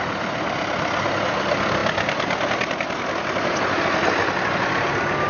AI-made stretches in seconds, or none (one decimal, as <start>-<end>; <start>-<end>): none